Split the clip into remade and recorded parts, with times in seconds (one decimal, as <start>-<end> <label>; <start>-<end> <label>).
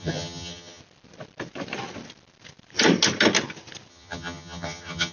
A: 0.0-0.8 remade; 0.8-3.9 recorded; 3.9-5.1 remade